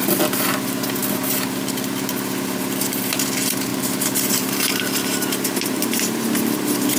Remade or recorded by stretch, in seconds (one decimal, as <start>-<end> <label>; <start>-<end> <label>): 0.0-1.0 remade; 1.0-2.6 recorded; 2.6-7.0 remade